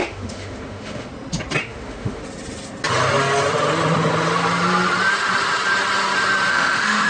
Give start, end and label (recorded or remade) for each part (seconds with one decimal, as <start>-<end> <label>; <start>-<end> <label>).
0.0-1.1 remade; 1.1-1.6 recorded; 1.6-2.2 remade; 2.2-6.5 recorded; 6.5-7.1 remade